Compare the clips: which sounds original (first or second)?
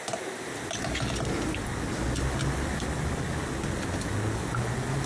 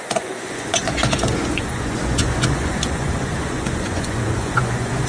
first